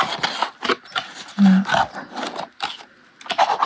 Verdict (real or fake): real